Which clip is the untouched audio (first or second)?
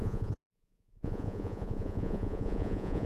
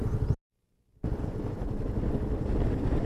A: second